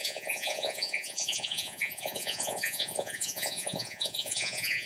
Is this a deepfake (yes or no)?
yes